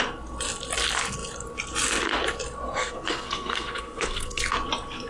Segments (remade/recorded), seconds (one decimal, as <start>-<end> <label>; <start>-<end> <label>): 0.0-2.8 recorded; 2.8-4.4 remade; 4.4-5.1 recorded